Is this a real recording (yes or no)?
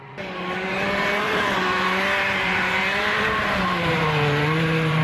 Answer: no